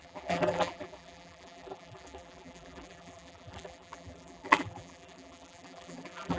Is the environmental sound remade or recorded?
remade